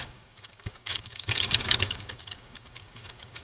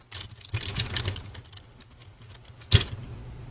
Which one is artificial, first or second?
first